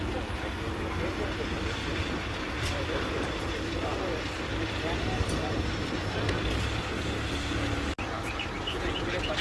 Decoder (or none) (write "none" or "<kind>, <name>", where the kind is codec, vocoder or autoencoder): none